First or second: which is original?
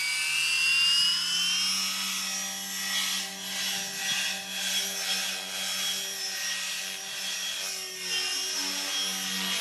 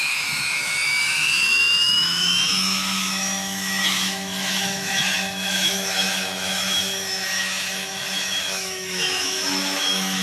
first